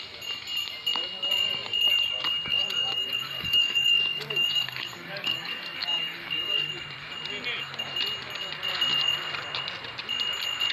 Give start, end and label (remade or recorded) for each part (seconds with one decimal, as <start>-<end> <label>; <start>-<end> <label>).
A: 0.0-2.5 recorded; 2.5-6.7 remade; 6.7-10.7 recorded

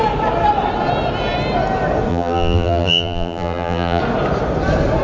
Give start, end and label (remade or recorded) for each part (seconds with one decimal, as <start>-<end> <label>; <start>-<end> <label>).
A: 0.0-2.1 recorded; 2.1-4.0 remade; 4.0-5.0 recorded

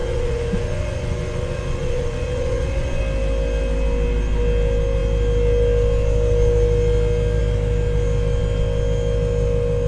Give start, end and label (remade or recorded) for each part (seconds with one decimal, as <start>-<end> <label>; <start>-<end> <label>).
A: 0.0-3.0 remade; 3.0-9.9 recorded

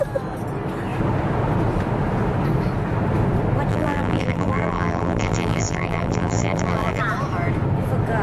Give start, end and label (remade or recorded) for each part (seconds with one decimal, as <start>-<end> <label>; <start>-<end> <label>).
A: 0.0-3.7 recorded; 3.7-7.0 remade; 7.0-8.2 recorded